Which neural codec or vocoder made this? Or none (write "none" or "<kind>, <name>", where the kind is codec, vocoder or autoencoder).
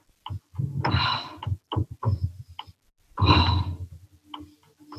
none